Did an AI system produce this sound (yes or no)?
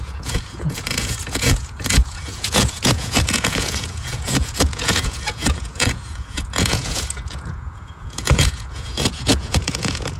yes